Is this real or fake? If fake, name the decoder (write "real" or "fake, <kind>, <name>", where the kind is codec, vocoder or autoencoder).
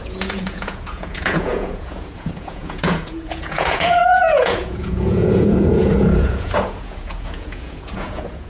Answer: fake, vocoder, Vocos